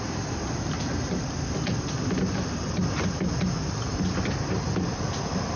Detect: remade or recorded recorded